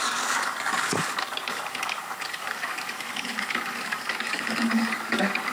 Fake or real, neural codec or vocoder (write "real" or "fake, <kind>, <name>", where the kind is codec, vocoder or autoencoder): fake, codec, DAC